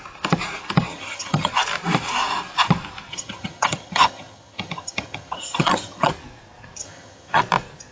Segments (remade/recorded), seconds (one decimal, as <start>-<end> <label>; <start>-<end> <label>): 0.0-0.9 recorded; 0.9-1.5 remade; 1.5-3.1 recorded; 3.1-6.1 remade; 6.1-6.8 recorded; 6.8-7.4 remade; 7.4-7.9 recorded

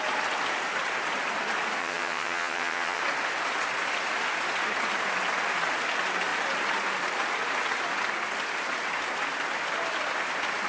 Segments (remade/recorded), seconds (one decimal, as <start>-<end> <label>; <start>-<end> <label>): 0.0-1.8 recorded; 1.8-3.0 remade; 3.0-10.7 recorded

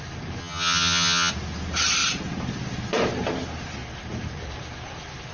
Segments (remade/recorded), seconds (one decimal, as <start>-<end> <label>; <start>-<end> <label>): 0.0-0.4 recorded; 0.4-1.3 remade; 1.3-5.3 recorded

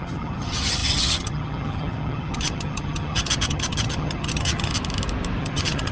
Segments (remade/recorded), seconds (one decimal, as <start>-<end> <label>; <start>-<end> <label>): 0.0-4.7 remade; 4.7-5.4 recorded; 5.4-5.9 remade

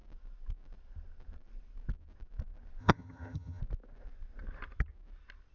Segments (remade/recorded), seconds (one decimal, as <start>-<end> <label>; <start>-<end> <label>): 0.0-2.8 recorded; 2.8-3.6 remade; 3.6-5.5 recorded

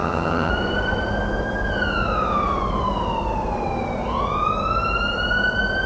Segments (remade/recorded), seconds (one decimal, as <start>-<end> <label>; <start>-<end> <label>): 0.0-0.5 remade; 0.5-5.9 recorded

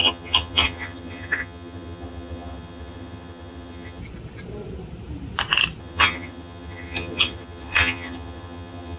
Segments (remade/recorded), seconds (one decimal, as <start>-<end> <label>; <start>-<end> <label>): 0.0-4.0 remade; 4.0-5.8 recorded; 5.8-9.0 remade